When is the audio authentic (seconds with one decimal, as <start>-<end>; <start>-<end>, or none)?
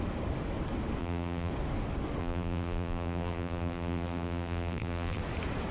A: 0.0-1.0; 1.5-2.2; 5.2-5.7